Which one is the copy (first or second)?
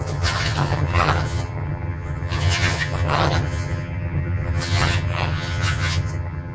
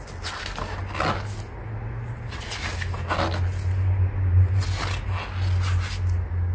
first